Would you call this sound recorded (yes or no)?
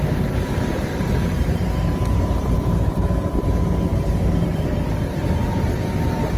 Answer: no